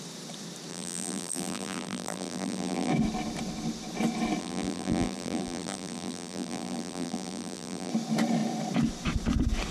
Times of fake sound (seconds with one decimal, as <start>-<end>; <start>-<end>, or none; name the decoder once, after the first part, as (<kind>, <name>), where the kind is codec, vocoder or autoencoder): 0.7-2.9 (vocoder, BigVGAN v2); 4.4-7.9